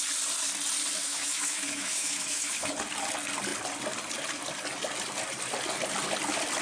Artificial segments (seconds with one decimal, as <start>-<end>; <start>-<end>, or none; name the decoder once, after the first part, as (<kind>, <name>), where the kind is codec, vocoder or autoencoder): 1.0-2.7 (autoencoder, DAC-VAE)